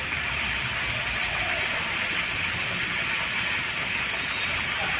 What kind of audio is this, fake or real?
real